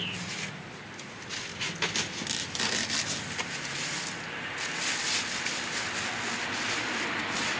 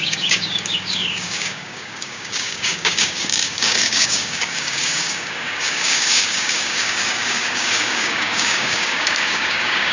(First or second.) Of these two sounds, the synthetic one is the second